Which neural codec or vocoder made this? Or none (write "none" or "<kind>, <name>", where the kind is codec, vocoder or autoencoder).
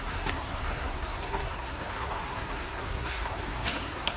codec, SNAC